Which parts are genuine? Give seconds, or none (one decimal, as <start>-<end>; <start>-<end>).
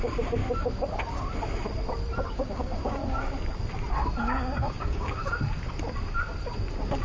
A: 0.4-2.3; 3.0-4.2; 5.2-7.0